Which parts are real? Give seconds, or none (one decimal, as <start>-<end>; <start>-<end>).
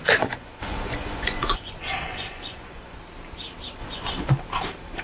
3.0-3.8; 4.3-5.0